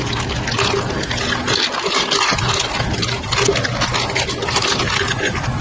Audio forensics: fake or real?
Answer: real